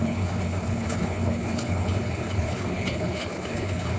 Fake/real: fake